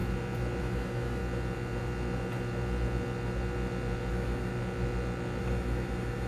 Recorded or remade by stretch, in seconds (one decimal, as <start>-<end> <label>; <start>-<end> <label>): 0.0-0.6 recorded; 0.6-1.2 remade; 1.2-4.1 recorded; 4.1-4.5 remade; 4.5-5.4 recorded; 5.4-6.3 remade